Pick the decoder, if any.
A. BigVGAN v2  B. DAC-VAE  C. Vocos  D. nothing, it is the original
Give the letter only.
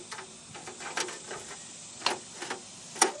D